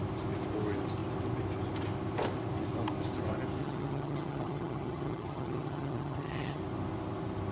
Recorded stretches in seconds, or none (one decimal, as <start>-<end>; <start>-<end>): 0.0-3.6; 6.6-7.5